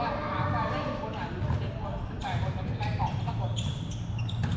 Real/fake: real